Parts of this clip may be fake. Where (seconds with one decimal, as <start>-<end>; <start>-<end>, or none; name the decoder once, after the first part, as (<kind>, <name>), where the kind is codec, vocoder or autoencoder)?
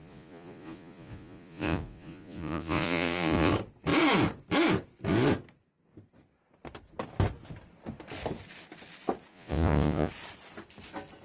0.0-3.5 (vocoder, Vocos); 9.3-10.1